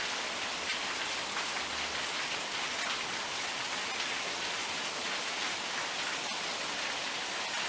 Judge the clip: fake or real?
real